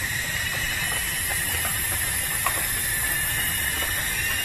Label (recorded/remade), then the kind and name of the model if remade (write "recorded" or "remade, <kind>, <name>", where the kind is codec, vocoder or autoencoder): remade, vocoder, BigVGAN v2